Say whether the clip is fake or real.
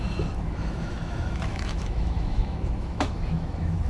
fake